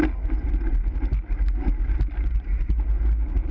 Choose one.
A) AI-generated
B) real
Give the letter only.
A